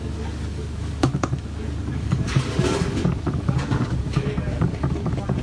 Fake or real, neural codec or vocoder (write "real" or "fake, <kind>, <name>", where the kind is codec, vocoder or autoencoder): fake, codec, DAC